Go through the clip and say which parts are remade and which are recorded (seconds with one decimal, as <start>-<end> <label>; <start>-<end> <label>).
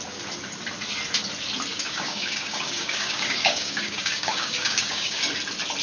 0.0-1.7 recorded; 1.7-5.2 remade; 5.2-5.8 recorded